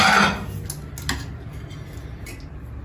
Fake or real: real